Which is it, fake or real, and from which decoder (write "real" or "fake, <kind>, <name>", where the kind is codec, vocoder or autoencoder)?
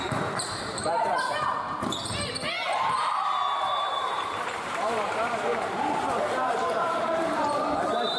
fake, vocoder, BigVGAN v2